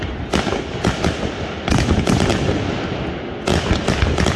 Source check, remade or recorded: recorded